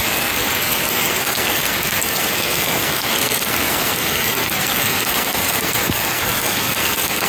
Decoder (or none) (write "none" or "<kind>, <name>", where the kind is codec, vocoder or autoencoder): codec, SNAC